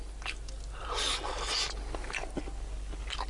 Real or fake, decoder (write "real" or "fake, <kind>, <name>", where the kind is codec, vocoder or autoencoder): real